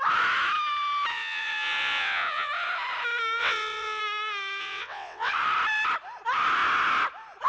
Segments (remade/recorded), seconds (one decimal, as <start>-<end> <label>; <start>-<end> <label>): 0.0-1.1 recorded; 1.1-2.5 remade; 2.5-3.4 recorded; 3.4-4.0 remade; 4.0-4.6 recorded; 4.6-5.3 remade; 5.3-7.5 recorded